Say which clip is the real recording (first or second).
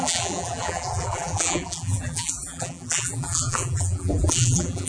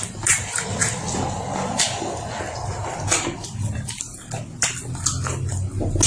second